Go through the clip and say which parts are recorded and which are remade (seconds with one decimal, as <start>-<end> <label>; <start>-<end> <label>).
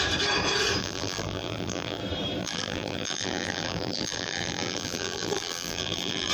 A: 0.0-0.8 recorded; 0.8-2.0 remade; 2.0-2.4 recorded; 2.4-6.3 remade